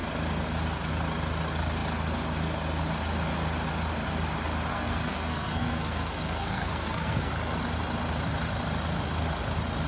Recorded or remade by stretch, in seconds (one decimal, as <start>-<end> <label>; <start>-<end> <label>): 0.0-4.7 recorded; 4.7-7.3 remade; 7.3-9.9 recorded

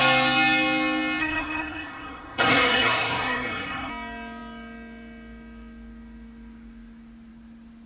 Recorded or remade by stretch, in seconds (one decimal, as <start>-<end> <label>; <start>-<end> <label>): 0.0-1.2 recorded; 1.2-3.9 remade; 3.9-7.9 recorded

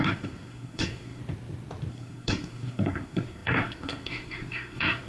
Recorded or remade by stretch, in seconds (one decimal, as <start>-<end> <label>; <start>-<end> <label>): 0.0-1.2 remade; 1.2-1.9 recorded; 1.9-5.1 remade

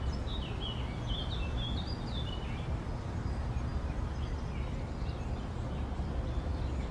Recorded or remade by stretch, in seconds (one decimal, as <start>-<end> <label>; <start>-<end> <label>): 0.0-6.9 recorded

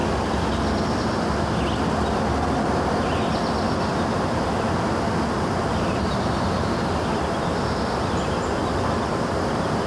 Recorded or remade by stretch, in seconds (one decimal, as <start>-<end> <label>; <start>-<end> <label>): 0.0-9.9 recorded